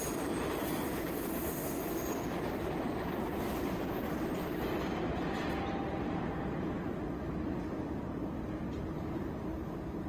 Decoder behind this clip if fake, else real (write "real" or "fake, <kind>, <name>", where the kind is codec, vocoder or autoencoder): real